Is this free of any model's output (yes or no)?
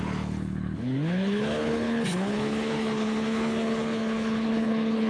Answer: no